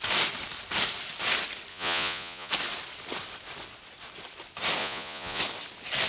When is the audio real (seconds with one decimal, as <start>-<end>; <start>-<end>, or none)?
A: 0.0-1.7; 2.5-4.8; 5.4-6.1